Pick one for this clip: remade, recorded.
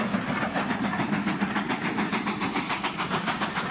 recorded